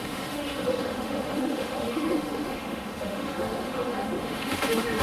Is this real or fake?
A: fake